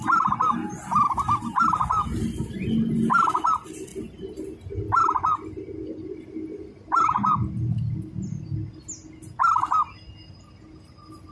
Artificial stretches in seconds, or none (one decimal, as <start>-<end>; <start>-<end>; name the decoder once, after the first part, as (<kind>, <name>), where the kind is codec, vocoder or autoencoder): none